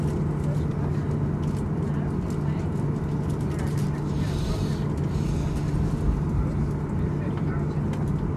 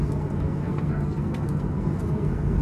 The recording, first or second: first